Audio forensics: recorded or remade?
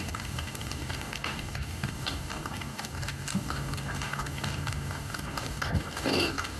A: remade